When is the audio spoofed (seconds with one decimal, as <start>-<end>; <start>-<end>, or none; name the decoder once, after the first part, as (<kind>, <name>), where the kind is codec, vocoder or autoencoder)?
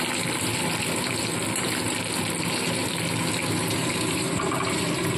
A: 3.8-4.4 (vocoder, BigVGAN v2)